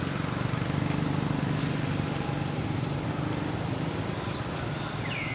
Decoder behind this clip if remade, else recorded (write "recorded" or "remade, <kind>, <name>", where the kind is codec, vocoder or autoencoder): remade, vocoder, BigVGAN v2